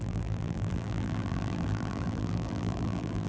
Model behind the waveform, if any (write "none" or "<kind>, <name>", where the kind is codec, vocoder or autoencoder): vocoder, BigVGAN v2